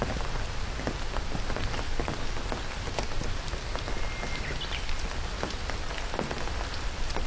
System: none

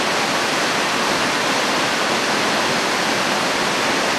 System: none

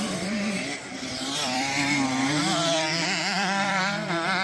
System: vocoder, BigVGAN v2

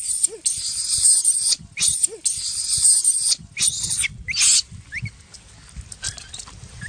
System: none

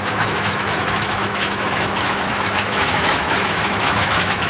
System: autoencoder, DAC-VAE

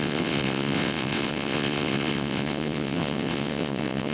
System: vocoder, WaveNeXt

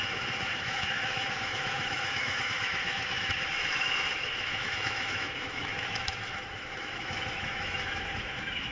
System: autoencoder, DAC-VAE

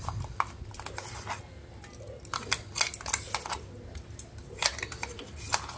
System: none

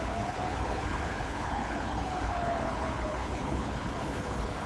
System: codec, HILCodec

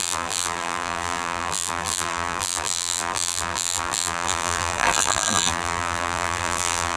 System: vocoder, BigVGAN v2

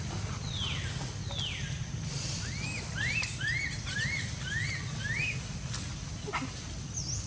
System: none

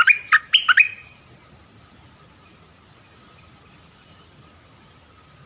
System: none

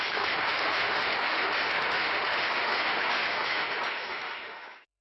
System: autoencoder, DAC-VAE